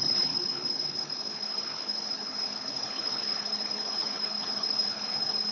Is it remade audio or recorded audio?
remade